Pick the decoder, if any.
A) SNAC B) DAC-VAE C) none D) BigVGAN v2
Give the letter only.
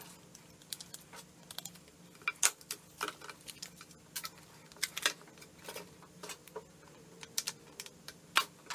C